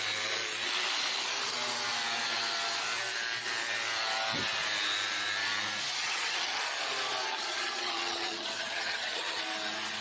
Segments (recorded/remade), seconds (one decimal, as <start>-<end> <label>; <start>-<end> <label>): 0.0-6.0 recorded; 6.0-6.6 remade; 6.6-7.3 recorded; 7.3-9.4 remade; 9.4-10.0 recorded